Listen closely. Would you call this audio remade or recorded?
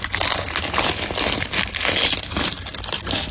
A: recorded